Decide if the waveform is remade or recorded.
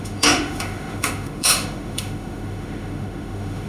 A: remade